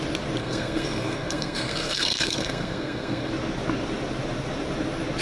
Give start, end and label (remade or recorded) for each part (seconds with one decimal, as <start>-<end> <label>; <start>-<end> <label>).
0.0-0.4 recorded; 0.4-3.3 remade; 3.3-5.2 recorded